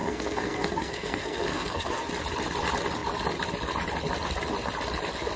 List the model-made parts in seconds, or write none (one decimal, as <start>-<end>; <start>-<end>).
0.0-2.1